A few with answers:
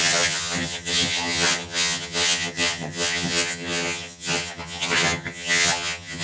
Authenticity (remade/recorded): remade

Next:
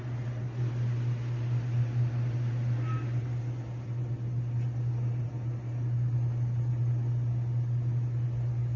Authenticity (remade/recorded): recorded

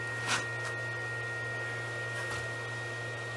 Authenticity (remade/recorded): recorded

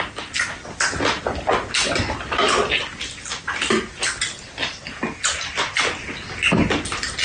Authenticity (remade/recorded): recorded